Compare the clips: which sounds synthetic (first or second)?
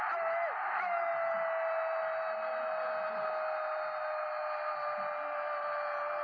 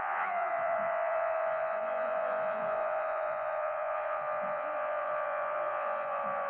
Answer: second